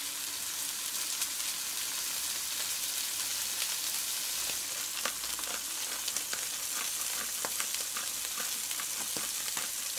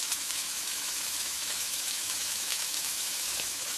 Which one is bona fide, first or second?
first